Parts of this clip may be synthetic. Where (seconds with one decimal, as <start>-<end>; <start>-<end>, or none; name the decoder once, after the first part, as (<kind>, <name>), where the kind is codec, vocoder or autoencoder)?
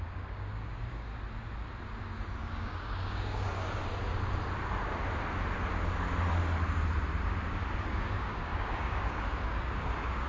0.0-1.1 (codec, DAC); 2.0-3.8; 7.9-10.3